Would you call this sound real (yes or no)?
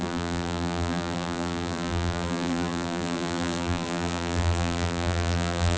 no